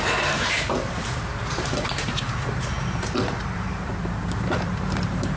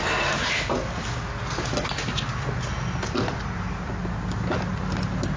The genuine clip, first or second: second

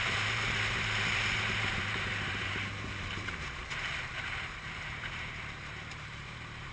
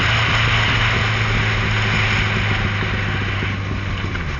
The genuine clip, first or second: second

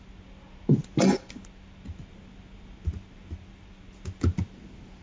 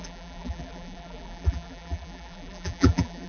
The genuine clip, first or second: first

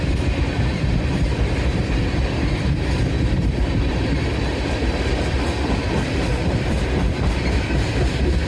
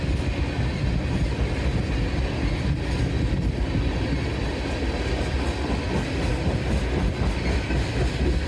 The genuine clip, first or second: second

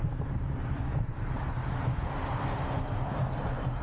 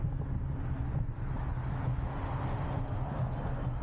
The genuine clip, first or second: second